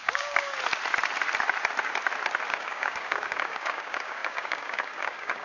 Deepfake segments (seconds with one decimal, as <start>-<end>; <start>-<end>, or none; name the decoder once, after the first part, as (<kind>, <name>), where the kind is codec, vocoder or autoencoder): 0.0-0.5 (codec, DAC); 2.5-5.4